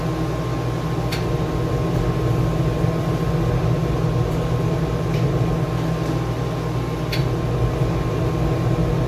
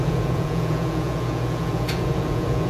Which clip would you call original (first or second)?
first